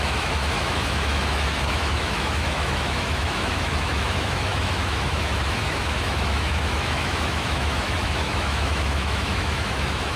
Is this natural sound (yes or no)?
no